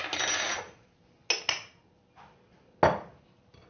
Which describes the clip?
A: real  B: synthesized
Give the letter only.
A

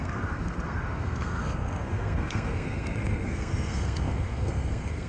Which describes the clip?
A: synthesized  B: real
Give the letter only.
A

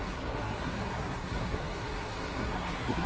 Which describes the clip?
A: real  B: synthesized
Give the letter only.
B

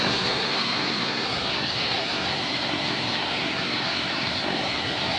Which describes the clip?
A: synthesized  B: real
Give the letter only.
A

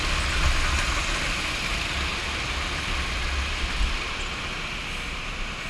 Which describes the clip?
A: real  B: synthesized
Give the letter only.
A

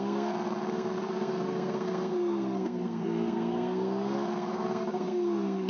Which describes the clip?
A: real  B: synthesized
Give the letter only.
B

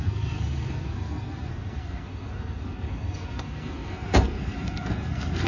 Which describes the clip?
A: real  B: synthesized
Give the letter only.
B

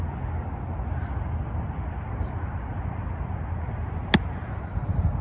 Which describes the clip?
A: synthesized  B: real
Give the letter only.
B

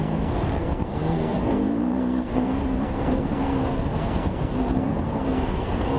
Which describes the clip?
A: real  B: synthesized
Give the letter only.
B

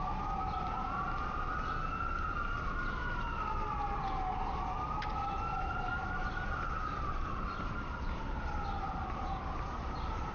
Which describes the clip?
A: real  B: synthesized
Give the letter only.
A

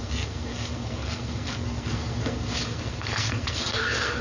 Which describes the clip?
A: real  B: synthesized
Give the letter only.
B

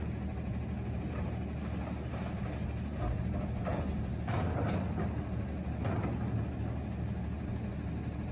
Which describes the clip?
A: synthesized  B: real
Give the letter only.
B